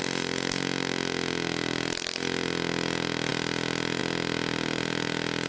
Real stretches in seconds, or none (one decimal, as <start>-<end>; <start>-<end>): 0.0-5.5